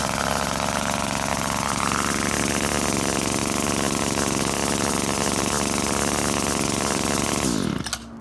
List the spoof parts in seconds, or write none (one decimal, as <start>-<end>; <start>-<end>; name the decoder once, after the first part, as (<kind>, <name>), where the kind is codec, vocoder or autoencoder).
none